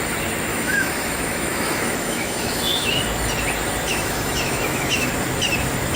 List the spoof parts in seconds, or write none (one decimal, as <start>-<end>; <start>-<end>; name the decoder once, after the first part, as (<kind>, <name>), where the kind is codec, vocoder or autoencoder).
0.5-3.0 (autoencoder, DAC-VAE); 3.9-5.1